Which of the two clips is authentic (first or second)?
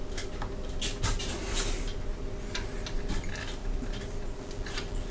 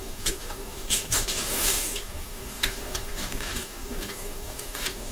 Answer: first